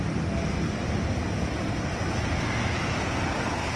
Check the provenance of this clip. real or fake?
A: real